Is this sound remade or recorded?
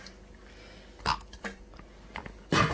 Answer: recorded